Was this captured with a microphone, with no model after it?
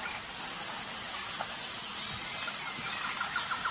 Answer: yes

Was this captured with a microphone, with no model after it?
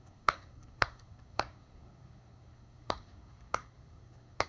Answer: no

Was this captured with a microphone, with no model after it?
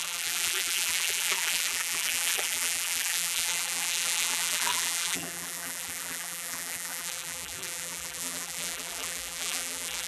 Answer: no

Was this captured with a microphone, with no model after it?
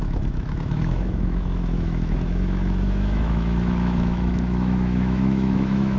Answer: no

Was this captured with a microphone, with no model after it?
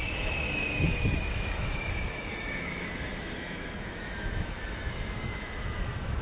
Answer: no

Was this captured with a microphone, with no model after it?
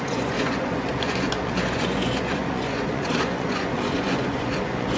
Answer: no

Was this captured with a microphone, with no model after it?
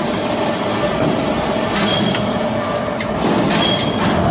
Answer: yes